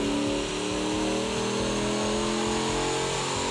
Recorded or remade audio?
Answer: recorded